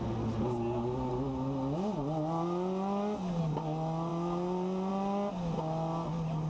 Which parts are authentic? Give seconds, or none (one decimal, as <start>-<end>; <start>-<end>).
0.0-6.5